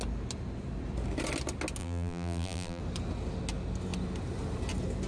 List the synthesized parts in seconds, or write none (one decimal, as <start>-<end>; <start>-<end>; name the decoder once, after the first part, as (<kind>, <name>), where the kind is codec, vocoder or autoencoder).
1.8-2.8 (vocoder, BigVGAN v2)